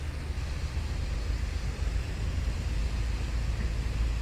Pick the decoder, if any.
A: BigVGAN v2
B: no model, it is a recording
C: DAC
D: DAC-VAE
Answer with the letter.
B